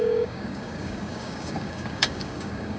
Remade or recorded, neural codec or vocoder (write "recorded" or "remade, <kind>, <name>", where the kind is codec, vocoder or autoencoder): remade, codec, DAC